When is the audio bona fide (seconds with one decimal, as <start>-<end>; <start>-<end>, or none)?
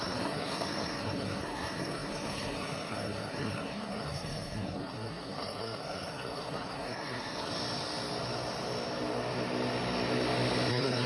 7.5-10.7